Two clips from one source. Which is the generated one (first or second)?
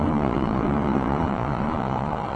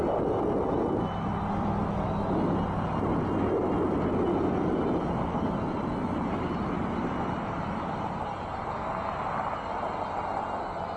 first